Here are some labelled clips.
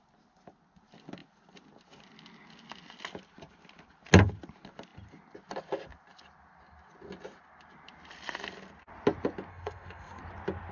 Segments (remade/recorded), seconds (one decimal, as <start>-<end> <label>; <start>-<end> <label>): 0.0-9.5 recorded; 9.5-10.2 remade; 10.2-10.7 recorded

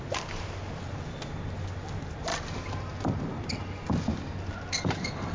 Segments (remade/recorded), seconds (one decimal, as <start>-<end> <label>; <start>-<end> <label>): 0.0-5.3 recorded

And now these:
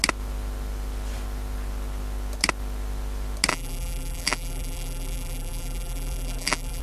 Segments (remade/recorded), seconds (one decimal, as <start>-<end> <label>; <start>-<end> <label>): 0.0-3.5 recorded; 3.5-6.8 remade